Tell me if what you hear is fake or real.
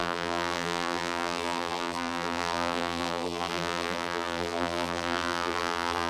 fake